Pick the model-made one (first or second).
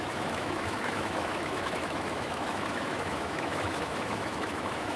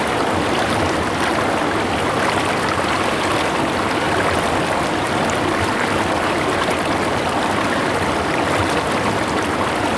first